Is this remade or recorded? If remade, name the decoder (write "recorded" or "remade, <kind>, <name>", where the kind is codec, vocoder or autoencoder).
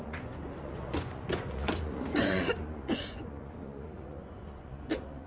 remade, vocoder, Vocos